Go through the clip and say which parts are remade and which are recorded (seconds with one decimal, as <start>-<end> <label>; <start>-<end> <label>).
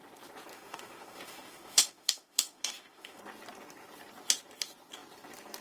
0.0-0.5 recorded; 0.5-3.2 remade; 3.2-5.6 recorded